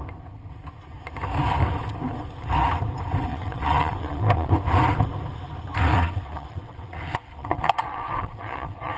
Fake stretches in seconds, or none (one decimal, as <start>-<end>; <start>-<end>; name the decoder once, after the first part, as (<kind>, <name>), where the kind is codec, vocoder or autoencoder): 3.3-4.5 (vocoder, WaveNeXt); 5.9-9.0